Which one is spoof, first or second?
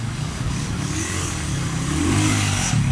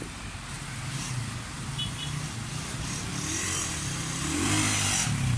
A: first